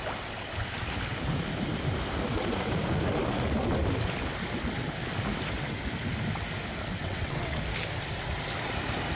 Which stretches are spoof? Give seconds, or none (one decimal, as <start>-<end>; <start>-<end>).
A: 7.0-7.6